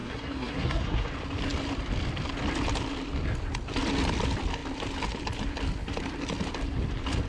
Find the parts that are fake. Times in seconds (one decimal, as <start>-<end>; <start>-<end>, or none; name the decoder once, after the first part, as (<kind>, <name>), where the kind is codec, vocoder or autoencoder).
0.0-1.1 (codec, SNAC)